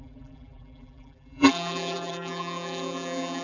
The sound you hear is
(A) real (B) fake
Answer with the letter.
B